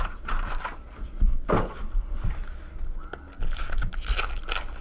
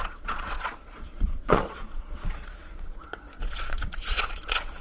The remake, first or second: second